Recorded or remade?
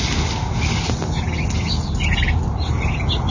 recorded